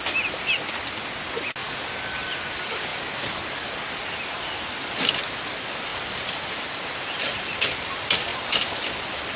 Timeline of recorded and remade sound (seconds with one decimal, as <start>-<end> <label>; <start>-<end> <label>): 0.0-5.9 recorded; 5.9-7.1 remade; 7.1-9.4 recorded